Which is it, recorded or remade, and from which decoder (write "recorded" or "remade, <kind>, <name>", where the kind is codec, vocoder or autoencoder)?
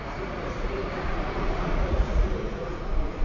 remade, vocoder, Vocos